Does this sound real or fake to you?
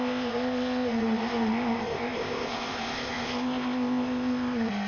fake